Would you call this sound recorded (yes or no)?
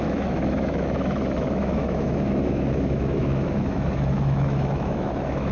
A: no